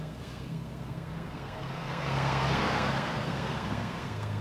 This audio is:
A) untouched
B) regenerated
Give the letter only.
B